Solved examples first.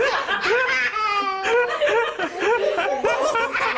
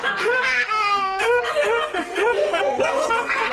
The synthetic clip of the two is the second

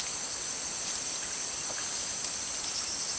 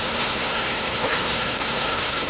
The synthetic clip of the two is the second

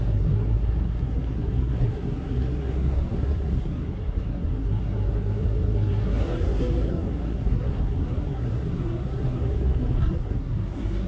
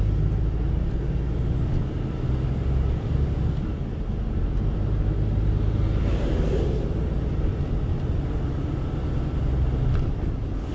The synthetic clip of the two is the first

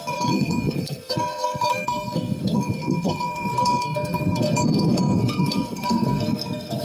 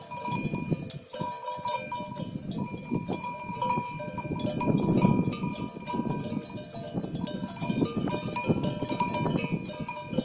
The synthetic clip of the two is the first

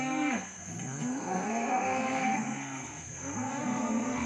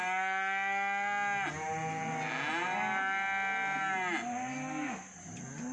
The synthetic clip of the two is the first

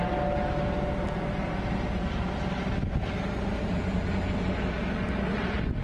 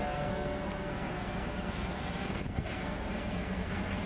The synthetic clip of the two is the second